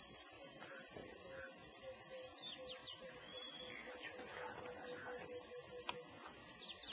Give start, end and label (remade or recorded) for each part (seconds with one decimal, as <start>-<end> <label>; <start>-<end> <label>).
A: 0.0-2.8 recorded; 2.8-3.6 remade; 3.6-6.9 recorded